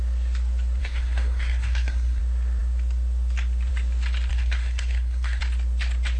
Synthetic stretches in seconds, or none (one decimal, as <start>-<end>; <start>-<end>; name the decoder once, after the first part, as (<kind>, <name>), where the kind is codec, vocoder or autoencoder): 0.8-2.2 (codec, SNAC); 4.3-5.4